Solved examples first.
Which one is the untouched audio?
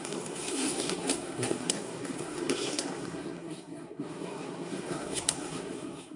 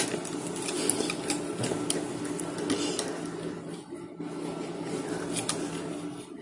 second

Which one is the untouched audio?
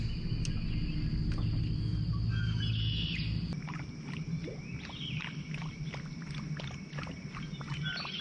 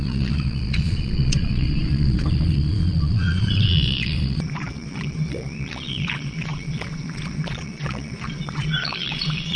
first